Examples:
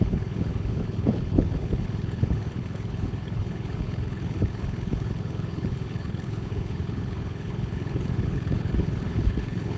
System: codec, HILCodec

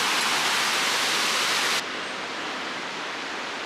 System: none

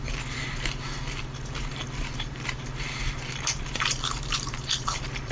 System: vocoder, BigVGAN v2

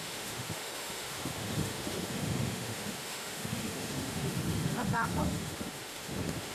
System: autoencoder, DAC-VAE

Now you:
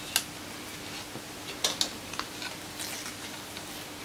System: none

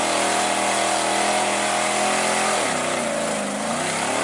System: none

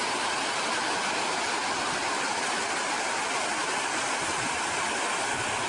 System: vocoder, BigVGAN v2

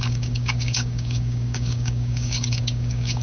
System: codec, DAC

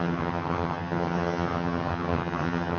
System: vocoder, HiFi-GAN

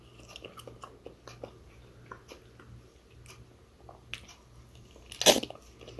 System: none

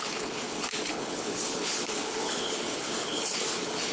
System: codec, HILCodec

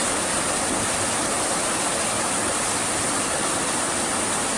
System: none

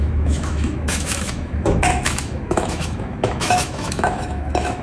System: autoencoder, DAC-VAE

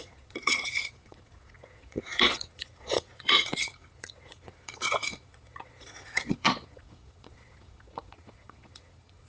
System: vocoder, Vocos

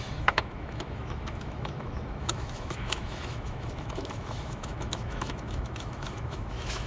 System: autoencoder, DAC-VAE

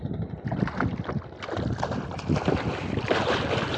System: none